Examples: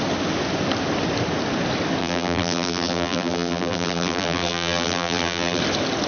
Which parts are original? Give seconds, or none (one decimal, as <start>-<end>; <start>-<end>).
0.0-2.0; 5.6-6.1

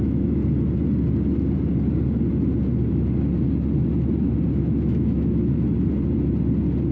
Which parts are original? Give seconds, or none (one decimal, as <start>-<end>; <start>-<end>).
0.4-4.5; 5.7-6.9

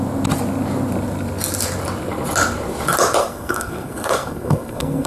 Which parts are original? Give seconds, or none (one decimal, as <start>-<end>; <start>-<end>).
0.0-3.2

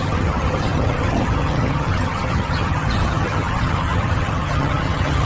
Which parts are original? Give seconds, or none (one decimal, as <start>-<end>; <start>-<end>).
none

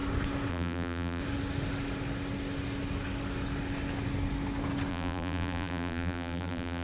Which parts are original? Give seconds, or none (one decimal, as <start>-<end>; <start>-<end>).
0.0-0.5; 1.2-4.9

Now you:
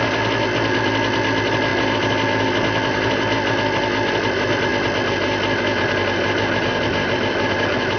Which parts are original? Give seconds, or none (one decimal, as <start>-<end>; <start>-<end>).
0.0-8.0

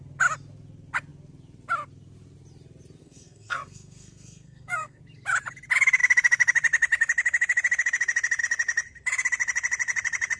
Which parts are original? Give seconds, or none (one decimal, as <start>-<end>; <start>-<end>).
0.0-3.0; 5.0-10.4